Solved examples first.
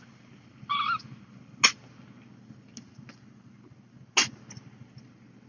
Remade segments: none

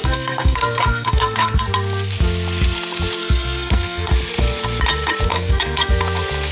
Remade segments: 0.0-1.6 (codec, SNAC); 3.2-4.1; 5.3-5.9

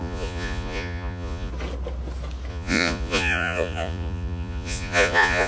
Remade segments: 0.0-1.5 (vocoder, Vocos); 2.5-5.5

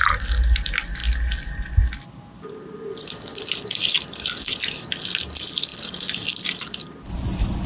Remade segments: none

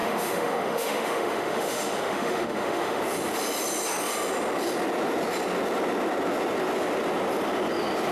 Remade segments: 0.0-3.0 (autoencoder, DAC-VAE)

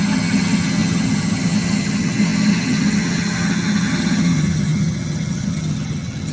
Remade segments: 0.0-6.3 (vocoder, HiFi-GAN)

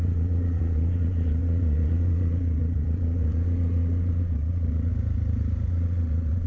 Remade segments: 0.0-4.9 (vocoder, Vocos); 5.7-6.5